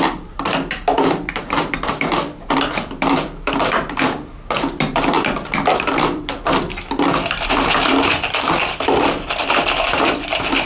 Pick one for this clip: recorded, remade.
remade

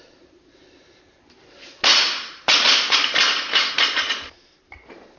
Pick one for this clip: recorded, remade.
remade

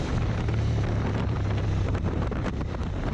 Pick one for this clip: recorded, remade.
remade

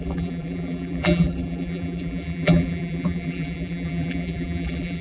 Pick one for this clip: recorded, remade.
remade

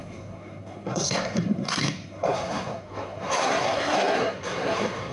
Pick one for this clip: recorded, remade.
remade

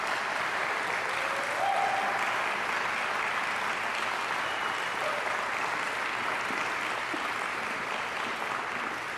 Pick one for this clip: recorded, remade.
recorded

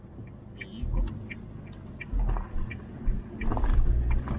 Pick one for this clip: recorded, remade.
recorded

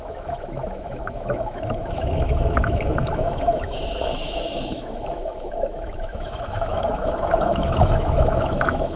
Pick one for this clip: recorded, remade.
remade